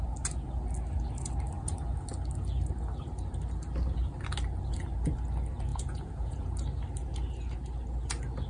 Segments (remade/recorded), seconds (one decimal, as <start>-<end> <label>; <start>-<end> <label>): 0.0-5.7 recorded; 5.7-6.5 remade; 6.5-8.5 recorded